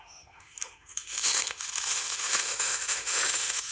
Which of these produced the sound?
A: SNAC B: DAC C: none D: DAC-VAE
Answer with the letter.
D